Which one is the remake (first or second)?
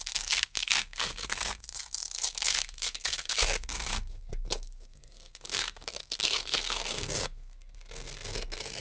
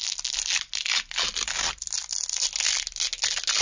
first